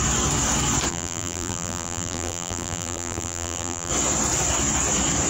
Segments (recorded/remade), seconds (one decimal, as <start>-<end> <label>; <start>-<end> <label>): 0.0-0.9 recorded; 0.9-3.9 remade; 3.9-5.3 recorded